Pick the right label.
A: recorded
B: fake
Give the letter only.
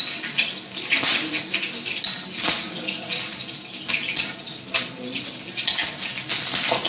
A